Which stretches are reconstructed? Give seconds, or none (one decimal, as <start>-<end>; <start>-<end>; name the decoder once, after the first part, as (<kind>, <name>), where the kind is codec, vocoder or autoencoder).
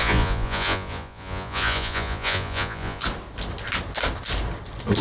0.0-3.0 (vocoder, Vocos)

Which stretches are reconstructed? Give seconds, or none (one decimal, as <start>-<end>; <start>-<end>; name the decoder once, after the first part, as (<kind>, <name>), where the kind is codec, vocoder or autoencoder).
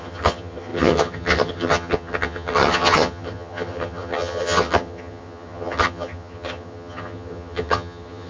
0.0-8.3 (vocoder, HiFi-GAN)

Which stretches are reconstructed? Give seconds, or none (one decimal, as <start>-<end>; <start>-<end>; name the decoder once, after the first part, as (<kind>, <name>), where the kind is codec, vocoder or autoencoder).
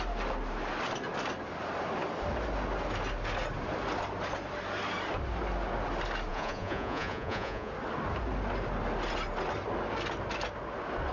6.3-7.7 (vocoder, Vocos)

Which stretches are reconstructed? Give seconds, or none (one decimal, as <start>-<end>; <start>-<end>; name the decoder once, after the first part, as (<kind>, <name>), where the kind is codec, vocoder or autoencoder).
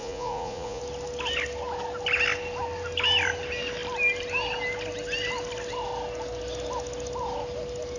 0.0-0.8 (vocoder, Vocos)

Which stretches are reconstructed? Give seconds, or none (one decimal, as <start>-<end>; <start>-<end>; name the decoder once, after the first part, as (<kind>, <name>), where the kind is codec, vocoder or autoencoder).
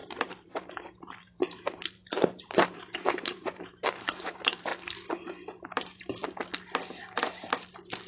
0.0-4.7 (vocoder, BigVGAN v2); 5.6-6.5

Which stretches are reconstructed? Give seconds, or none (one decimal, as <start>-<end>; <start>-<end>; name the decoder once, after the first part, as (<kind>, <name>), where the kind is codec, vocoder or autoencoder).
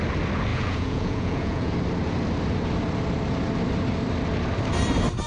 0.5-1.7 (vocoder, Vocos)